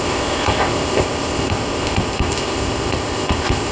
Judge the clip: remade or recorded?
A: remade